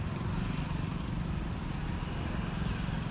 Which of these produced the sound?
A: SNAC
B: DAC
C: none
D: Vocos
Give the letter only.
C